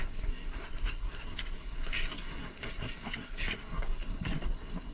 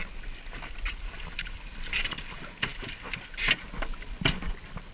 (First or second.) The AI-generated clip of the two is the first